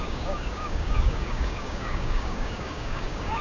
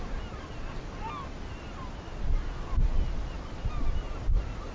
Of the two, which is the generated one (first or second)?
first